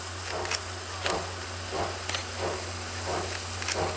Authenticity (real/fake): real